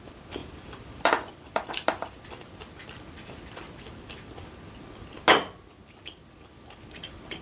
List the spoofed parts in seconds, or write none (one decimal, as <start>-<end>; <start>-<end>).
0.4-1.7